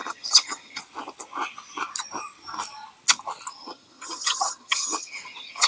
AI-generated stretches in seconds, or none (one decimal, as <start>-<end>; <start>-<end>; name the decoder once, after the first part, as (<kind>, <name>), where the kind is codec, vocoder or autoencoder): 0.0-0.8 (vocoder, HiFi-GAN); 3.5-5.7